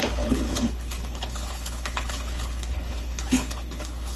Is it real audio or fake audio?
fake